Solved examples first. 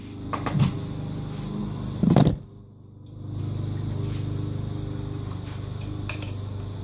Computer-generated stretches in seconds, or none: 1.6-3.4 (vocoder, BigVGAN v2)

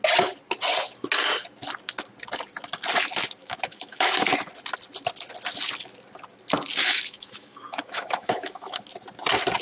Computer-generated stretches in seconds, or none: 3.4-4.1 (autoencoder, DAC-VAE); 6.8-8.9

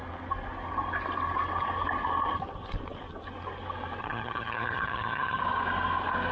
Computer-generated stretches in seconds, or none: 4.0-5.4 (vocoder, HiFi-GAN)

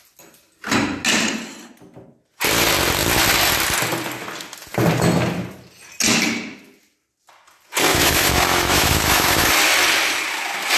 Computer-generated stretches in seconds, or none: 7.9-9.5 (autoencoder, DAC-VAE)

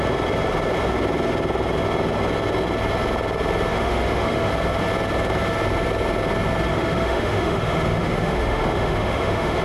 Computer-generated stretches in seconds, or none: 3.7-4.5 (autoencoder, DAC-VAE); 6.7-9.6

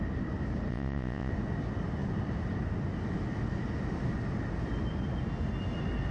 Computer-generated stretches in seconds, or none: 0.7-1.3 (vocoder, Vocos)